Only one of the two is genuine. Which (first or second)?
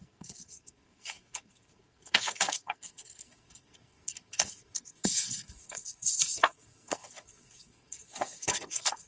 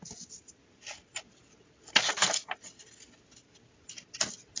second